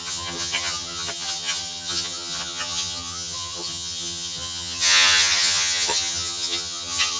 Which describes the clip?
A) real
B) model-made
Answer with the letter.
B